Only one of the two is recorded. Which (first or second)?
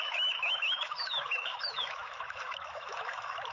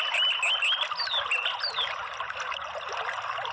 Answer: second